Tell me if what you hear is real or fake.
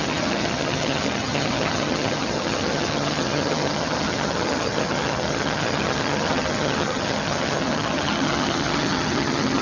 fake